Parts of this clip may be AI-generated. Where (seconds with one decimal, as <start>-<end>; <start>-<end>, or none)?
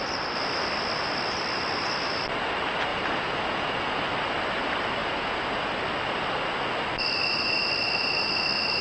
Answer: 2.9-4.0; 5.0-5.7